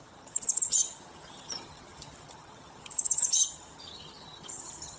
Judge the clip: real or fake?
fake